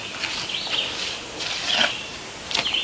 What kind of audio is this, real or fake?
real